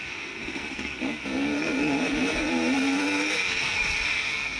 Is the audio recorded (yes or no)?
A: no